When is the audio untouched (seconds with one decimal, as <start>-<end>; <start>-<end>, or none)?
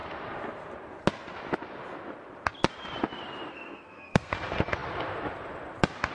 0.0-3.5; 4.3-6.1